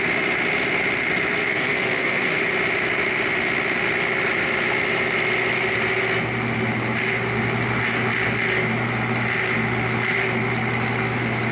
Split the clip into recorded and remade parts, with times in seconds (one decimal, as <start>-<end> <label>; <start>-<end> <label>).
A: 0.0-1.4 recorded; 1.4-2.4 remade; 2.4-11.5 recorded

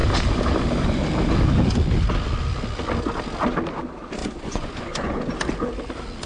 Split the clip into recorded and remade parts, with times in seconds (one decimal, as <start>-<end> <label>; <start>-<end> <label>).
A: 0.0-4.2 recorded; 4.2-5.3 remade; 5.3-6.3 recorded

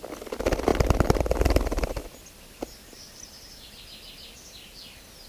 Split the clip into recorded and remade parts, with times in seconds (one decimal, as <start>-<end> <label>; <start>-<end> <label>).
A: 0.0-5.3 recorded

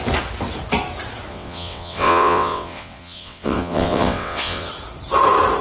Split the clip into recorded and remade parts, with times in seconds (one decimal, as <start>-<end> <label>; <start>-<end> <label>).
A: 0.0-1.3 recorded; 1.3-4.7 remade; 4.7-5.6 recorded